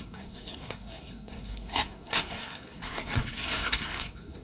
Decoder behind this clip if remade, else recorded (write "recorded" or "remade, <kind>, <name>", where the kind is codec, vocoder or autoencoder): remade, codec, SNAC